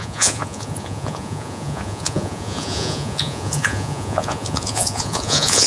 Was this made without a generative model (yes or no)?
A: no